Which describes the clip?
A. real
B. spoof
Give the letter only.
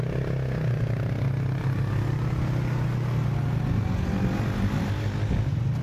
A